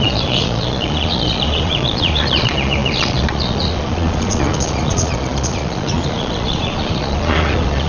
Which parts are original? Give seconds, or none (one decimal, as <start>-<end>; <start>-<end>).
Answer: none